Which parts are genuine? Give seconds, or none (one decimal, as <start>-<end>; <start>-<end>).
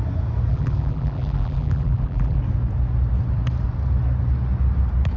0.0-0.5; 2.4-5.2